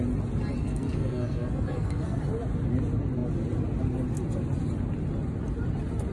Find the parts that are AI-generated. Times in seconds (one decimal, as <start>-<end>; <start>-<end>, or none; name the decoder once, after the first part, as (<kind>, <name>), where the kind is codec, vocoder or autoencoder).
0.6-2.2 (codec, SNAC)